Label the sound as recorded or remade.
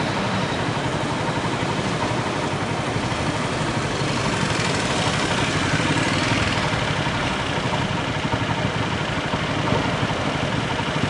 recorded